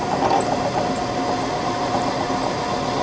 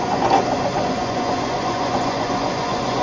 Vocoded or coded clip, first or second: second